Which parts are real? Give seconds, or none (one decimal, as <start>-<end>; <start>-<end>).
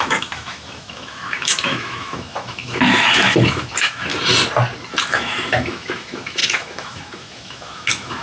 4.1-5.0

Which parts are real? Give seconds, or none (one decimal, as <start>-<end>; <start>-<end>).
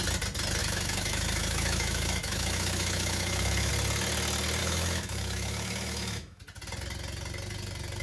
0.0-0.6; 3.7-4.6; 6.4-8.0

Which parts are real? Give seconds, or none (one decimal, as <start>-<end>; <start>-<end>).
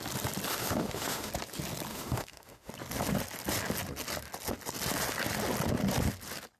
0.0-0.5; 1.3-1.9; 2.7-6.6